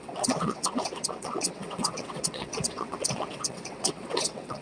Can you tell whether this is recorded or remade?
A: remade